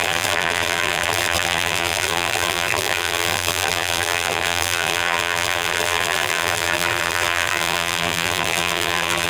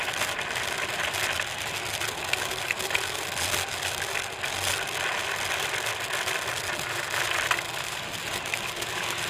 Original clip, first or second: second